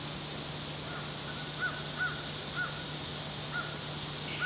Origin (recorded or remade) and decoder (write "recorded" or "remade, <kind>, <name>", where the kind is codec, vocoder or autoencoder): recorded